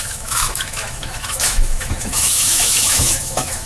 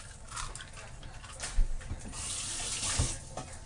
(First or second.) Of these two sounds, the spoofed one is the first